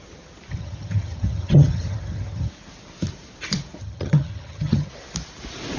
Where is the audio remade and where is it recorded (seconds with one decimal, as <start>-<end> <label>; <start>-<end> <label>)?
0.0-0.5 recorded; 0.5-2.5 remade; 2.5-3.8 recorded; 3.8-4.9 remade; 4.9-5.8 recorded